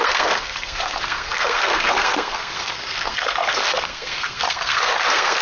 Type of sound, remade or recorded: remade